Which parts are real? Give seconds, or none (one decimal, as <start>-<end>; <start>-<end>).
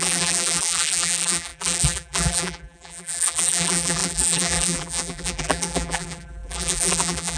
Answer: none